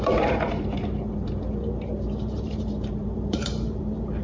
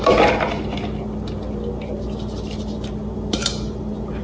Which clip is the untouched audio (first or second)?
second